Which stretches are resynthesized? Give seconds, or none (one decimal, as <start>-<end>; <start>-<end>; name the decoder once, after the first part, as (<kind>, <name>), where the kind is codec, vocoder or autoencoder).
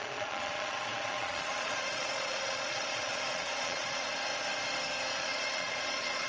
0.0-4.3 (vocoder, Vocos); 5.1-6.3